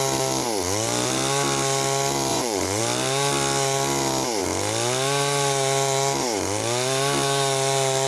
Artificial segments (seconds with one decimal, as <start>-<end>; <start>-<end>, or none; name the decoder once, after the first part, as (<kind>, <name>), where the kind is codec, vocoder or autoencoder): 2.3-2.8 (vocoder, Vocos)